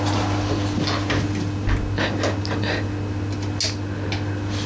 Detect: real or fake real